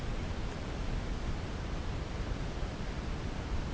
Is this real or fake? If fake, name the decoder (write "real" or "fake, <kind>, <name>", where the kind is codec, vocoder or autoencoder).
real